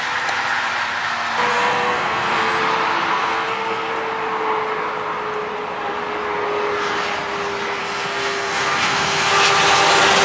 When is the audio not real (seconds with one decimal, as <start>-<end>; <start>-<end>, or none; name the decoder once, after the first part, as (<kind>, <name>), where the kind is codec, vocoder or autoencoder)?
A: 1.5-2.6 (codec, SNAC); 3.1-3.9; 7.8-9.3